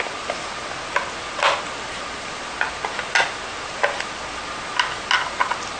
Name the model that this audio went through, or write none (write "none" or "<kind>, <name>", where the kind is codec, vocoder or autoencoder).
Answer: none